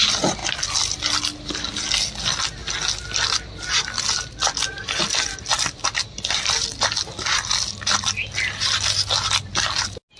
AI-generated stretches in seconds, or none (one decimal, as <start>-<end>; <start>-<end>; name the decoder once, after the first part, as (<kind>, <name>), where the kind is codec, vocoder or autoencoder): none